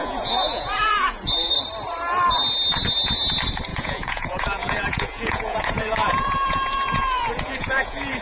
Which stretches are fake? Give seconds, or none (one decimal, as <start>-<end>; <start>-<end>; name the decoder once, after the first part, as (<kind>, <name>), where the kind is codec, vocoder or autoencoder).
0.0-1.5 (vocoder, Vocos); 3.7-8.2